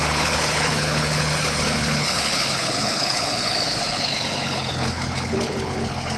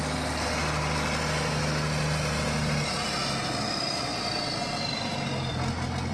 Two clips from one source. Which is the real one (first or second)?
second